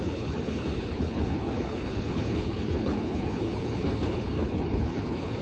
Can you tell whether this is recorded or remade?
remade